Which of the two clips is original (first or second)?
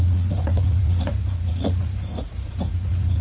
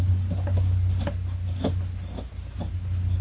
second